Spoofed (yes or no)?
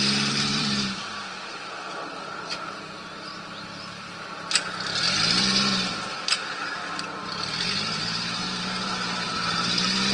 yes